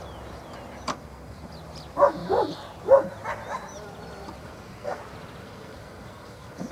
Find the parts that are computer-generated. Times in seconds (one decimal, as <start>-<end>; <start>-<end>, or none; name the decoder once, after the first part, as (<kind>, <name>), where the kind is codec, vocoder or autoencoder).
0.9-1.5 (codec, SNAC); 4.4-5.0; 5.4-6.7

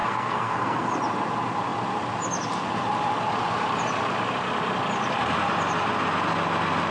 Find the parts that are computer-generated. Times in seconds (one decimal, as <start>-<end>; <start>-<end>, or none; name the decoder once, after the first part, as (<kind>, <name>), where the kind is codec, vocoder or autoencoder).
0.0-0.9 (codec, SNAC)

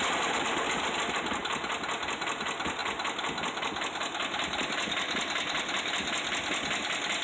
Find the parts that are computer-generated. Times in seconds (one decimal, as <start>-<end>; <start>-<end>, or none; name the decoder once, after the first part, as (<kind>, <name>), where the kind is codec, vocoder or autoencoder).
none

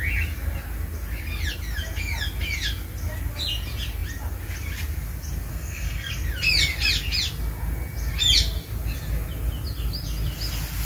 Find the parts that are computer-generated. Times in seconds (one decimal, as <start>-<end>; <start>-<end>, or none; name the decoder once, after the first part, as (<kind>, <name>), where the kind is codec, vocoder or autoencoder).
5.5-6.1 (codec, SNAC)

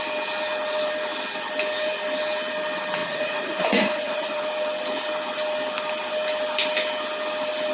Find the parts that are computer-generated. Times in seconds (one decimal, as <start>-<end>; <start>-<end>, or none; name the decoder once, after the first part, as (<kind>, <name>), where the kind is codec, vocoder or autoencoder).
3.0-4.4 (vocoder, Vocos)